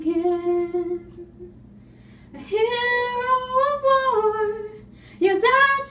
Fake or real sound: real